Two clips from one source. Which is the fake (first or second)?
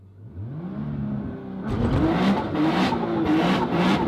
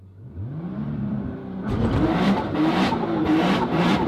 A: second